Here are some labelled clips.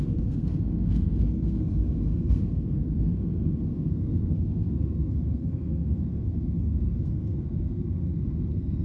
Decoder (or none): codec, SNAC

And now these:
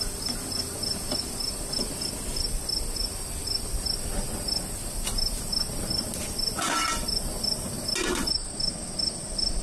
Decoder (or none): none